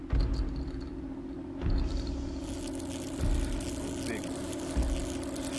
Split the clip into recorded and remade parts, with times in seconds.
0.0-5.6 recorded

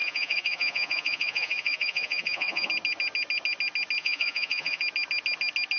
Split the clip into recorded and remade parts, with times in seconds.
0.0-2.7 remade; 2.7-4.0 recorded; 4.0-4.8 remade; 4.8-5.8 recorded

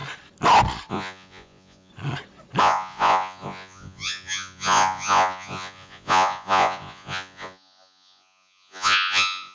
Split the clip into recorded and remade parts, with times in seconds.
0.0-0.9 recorded; 0.9-1.9 remade; 1.9-2.6 recorded; 2.6-9.5 remade